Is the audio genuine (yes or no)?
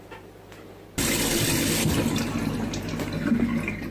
yes